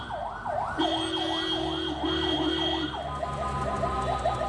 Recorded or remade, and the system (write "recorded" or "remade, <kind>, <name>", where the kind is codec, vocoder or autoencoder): recorded